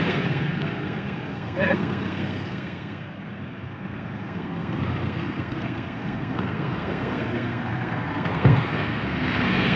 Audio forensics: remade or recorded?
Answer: remade